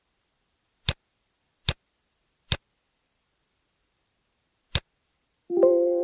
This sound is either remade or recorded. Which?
remade